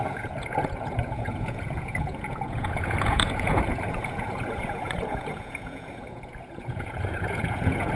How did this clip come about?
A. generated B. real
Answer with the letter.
A